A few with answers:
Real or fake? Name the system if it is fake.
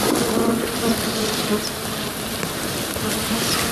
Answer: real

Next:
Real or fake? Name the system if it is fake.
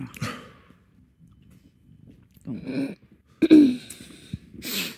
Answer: real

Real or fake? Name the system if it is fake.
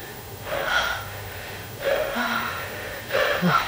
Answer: fake, autoencoder, DAC-VAE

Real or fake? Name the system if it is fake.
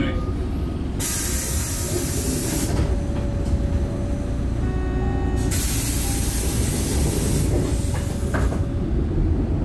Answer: real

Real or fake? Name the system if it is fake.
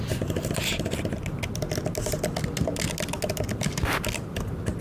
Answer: real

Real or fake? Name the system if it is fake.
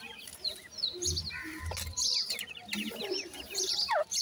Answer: real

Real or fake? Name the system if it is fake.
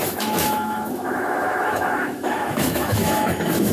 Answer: fake, autoencoder, DAC-VAE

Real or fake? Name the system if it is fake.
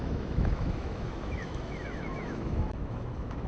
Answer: fake, autoencoder, DAC-VAE